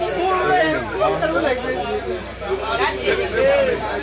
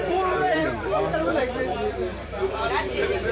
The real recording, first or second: first